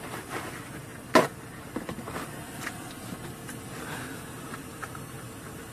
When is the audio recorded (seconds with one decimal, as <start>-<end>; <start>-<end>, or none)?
0.9-4.3